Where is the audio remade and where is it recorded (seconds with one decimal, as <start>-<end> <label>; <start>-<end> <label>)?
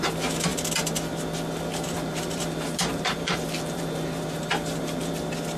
0.0-1.7 recorded; 1.7-5.1 remade; 5.1-5.6 recorded